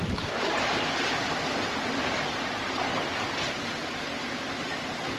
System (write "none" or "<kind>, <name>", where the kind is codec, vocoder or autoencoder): none